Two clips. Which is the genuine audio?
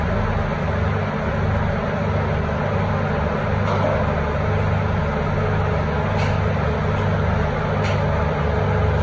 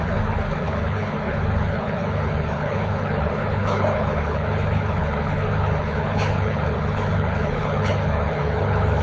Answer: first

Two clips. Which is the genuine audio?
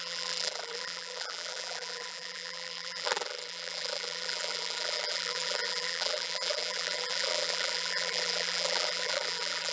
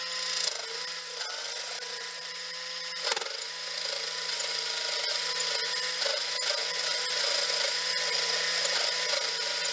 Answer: second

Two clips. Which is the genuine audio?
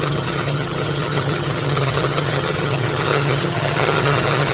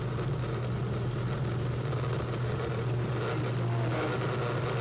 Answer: second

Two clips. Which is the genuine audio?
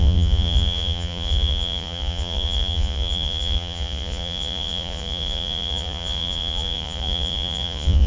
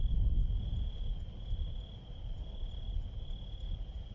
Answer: second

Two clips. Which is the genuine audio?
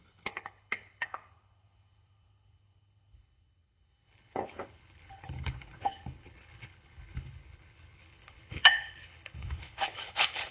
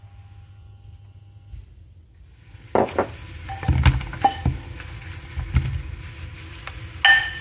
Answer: second